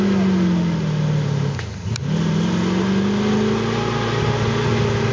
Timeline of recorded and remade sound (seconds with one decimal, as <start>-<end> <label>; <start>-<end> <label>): 0.0-5.1 recorded